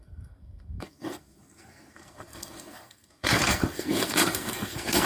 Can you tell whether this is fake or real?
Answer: fake